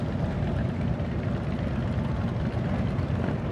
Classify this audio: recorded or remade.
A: recorded